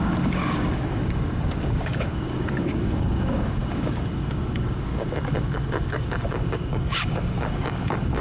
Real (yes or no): no